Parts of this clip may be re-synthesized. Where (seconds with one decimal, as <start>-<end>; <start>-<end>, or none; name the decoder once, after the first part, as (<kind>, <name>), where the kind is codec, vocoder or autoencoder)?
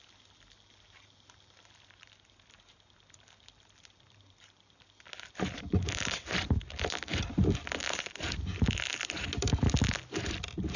none